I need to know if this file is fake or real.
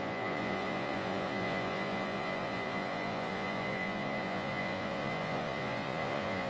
fake